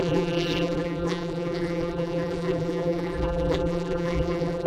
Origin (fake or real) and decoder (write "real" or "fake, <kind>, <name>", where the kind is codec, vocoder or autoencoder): fake, vocoder, BigVGAN v2